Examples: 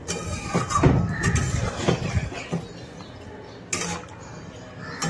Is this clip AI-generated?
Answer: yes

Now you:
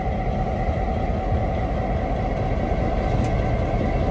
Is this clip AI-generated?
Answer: no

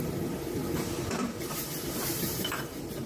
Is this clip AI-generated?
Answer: yes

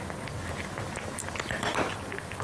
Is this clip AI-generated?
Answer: no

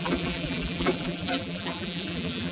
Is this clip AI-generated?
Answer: yes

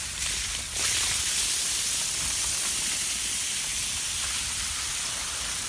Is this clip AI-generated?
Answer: no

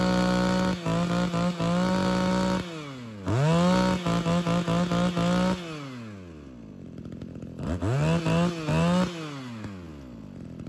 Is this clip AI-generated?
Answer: no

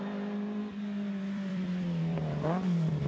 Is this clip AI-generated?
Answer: yes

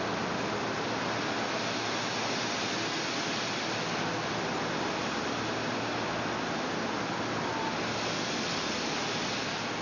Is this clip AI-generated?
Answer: no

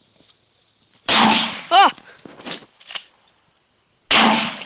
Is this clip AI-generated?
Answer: no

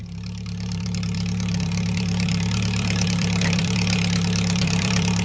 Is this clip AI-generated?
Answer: yes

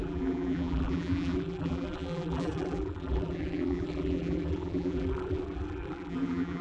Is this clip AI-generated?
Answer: yes